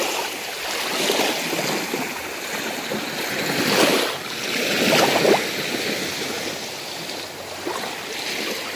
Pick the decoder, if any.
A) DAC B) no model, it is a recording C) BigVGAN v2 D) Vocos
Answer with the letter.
B